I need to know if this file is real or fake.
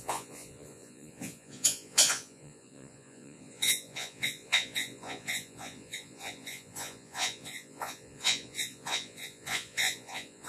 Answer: fake